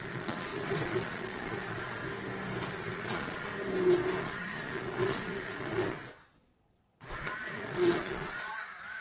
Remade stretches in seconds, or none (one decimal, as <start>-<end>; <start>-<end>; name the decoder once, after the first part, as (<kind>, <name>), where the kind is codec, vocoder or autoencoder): 0.0-2.0 (vocoder, Vocos); 2.7-3.5; 4.2-9.0